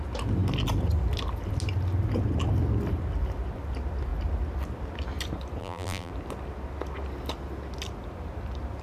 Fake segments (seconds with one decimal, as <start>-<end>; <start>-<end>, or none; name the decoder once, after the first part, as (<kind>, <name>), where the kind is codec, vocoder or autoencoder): 5.6-6.1 (vocoder, BigVGAN v2)